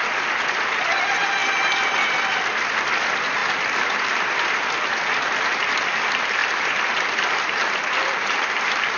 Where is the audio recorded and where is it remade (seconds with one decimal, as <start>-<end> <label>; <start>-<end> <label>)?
0.0-3.4 recorded; 3.4-4.5 remade; 4.5-6.4 recorded; 6.4-9.0 remade